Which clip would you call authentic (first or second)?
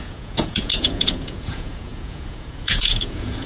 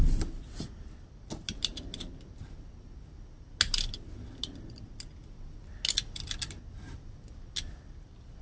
second